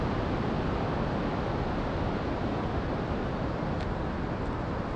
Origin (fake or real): real